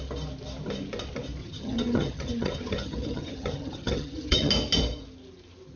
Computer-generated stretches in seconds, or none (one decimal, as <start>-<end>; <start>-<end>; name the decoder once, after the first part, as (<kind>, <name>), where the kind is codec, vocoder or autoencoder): 1.4-4.5 (vocoder, HiFi-GAN)